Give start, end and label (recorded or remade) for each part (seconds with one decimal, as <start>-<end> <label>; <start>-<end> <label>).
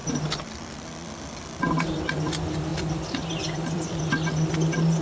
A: 0.0-2.7 recorded; 2.7-4.1 remade; 4.1-5.0 recorded